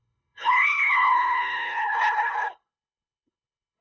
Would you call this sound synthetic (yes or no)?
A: yes